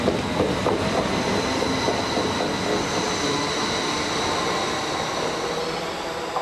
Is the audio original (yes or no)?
yes